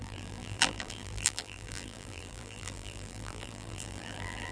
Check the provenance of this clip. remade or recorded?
remade